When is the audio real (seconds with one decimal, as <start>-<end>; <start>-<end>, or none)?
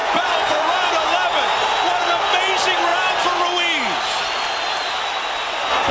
0.9-5.9